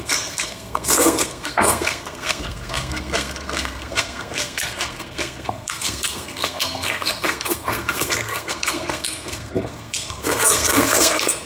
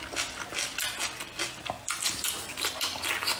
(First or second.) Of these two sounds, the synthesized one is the first